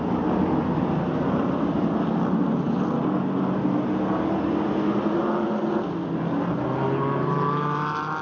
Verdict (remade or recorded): recorded